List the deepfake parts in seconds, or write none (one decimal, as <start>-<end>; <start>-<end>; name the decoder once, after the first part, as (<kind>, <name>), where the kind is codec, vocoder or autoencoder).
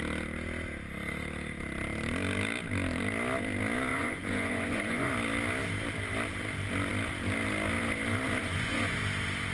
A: 3.9-5.1 (vocoder, Vocos); 8.4-9.0